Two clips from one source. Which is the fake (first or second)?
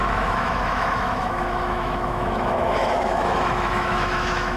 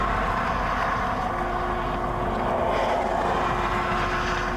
first